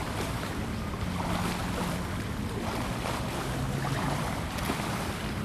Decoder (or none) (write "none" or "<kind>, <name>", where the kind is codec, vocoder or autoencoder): none